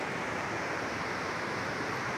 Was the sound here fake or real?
real